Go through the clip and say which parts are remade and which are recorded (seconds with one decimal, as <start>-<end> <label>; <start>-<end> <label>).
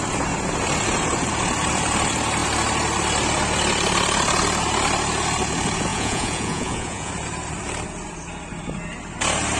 0.0-5.9 recorded; 5.9-7.1 remade; 7.1-9.6 recorded